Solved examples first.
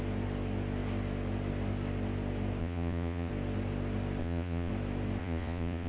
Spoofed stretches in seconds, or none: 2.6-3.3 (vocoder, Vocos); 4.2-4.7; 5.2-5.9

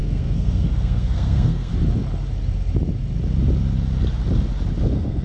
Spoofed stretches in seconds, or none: 0.0-1.7 (codec, SNAC); 4.8-5.2

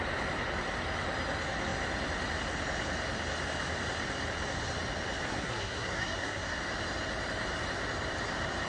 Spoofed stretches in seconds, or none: 5.3-6.6 (codec, SNAC)

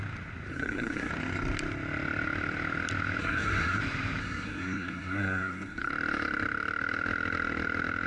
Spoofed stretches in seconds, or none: 0.5-1.1 (codec, SNAC); 3.2-3.8; 4.2-5.9

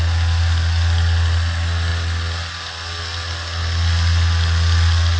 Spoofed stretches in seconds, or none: none